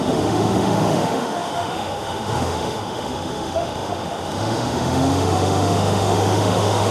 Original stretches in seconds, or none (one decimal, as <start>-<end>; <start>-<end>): none